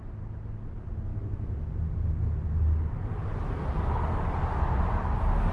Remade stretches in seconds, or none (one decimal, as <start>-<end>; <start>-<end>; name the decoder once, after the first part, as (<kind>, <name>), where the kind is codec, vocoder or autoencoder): 1.1-1.7 (autoencoder, DAC-VAE)